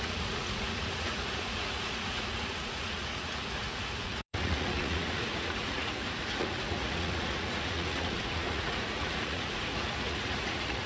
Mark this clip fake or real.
fake